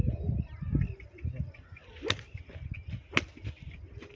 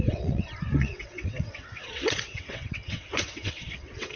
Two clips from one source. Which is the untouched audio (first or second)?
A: first